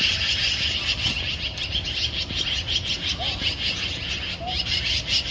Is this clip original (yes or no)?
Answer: yes